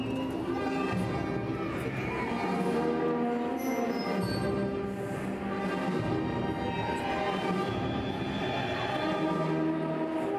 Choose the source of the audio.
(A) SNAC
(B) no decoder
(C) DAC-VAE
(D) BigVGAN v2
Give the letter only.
B